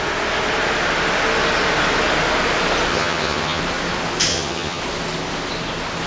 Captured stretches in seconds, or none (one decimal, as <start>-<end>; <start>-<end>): 0.0-2.9; 3.6-4.3; 4.8-6.1